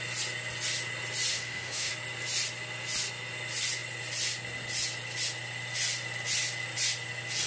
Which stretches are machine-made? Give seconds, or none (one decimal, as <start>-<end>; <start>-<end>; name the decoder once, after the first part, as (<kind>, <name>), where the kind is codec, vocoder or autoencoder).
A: 1.3-1.9 (autoencoder, DAC-VAE)